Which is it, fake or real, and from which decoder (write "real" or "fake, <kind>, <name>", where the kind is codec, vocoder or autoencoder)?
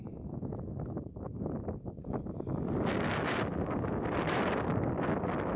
real